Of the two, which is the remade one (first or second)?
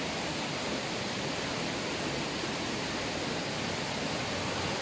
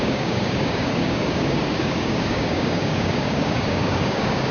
second